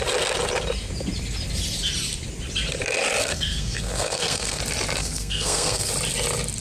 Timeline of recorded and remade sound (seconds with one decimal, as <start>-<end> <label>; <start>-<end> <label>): 0.0-3.2 recorded; 3.2-4.6 remade; 4.6-5.0 recorded; 5.0-5.9 remade; 5.9-6.6 recorded